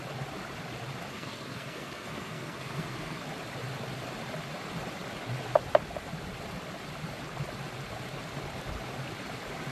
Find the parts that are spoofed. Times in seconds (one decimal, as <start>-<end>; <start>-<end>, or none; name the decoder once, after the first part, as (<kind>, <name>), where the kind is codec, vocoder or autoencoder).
1.1-3.2 (codec, SNAC)

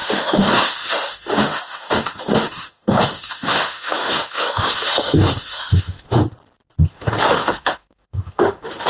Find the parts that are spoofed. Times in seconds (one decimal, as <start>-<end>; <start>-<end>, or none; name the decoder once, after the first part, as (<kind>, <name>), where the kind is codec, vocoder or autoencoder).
0.0-6.2 (autoencoder, DAC-VAE); 6.9-8.9

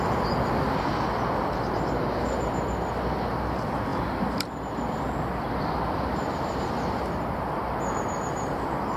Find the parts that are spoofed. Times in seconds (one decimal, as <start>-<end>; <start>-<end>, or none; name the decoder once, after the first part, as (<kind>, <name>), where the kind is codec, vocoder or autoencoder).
3.9-9.0 (vocoder, BigVGAN v2)

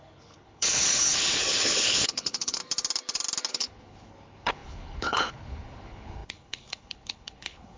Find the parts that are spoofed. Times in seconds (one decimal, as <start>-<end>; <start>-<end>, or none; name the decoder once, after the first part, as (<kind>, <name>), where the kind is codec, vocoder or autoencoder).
0.0-2.6 (codec, HILCodec); 3.5-7.8

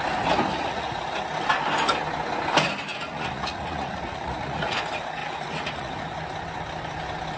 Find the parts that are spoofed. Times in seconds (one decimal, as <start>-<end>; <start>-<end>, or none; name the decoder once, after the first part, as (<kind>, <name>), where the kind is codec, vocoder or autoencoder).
0.5-1.1 (vocoder, Vocos); 2.9-4.8; 5.2-5.9

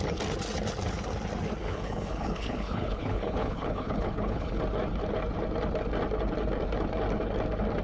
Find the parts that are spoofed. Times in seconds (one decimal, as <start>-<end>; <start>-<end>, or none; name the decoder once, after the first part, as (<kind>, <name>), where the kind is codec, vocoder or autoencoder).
1.6-4.6 (codec, HILCodec)